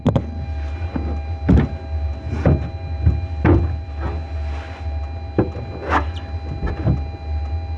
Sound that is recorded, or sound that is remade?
recorded